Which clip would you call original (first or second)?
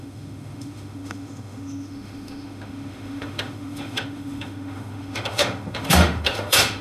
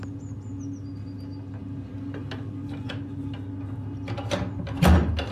second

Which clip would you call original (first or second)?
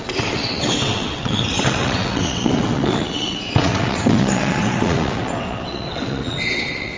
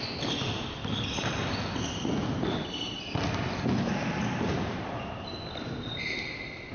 second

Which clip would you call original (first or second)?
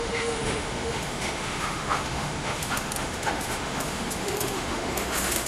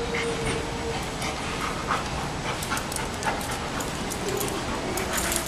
second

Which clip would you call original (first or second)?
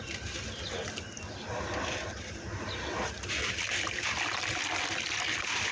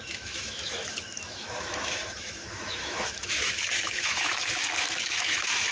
first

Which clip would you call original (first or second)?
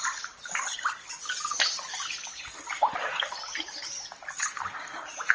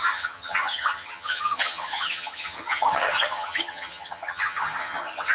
first